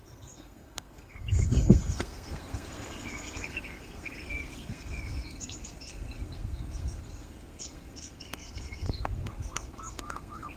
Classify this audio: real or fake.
fake